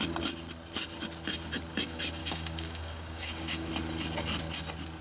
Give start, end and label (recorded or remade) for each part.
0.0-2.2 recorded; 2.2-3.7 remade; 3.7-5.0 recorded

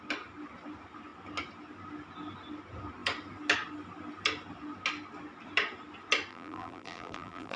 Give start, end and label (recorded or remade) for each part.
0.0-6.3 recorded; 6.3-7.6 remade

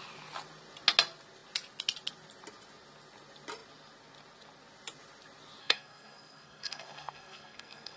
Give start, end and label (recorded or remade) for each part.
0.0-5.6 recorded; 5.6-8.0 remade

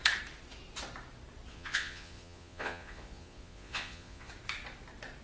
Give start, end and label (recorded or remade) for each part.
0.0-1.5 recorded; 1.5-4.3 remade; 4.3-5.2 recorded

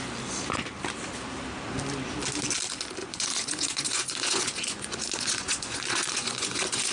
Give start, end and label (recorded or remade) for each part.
0.0-3.0 recorded; 3.0-6.9 remade

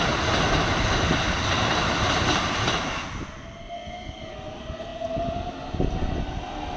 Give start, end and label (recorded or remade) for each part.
0.0-6.8 recorded